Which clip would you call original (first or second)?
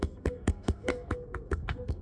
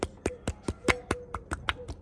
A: second